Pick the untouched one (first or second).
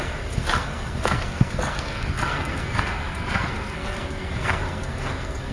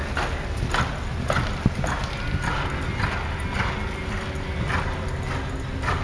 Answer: second